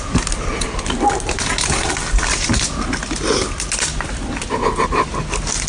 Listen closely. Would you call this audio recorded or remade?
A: recorded